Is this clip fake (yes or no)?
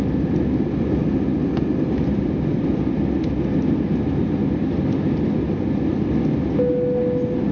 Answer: no